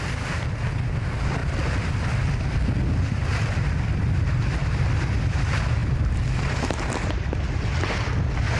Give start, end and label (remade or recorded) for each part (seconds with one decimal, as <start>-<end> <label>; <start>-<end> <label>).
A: 0.0-8.6 recorded